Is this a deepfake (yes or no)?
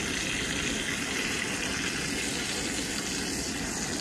no